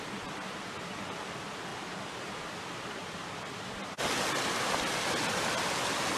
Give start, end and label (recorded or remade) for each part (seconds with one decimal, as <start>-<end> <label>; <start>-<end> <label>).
0.0-6.2 recorded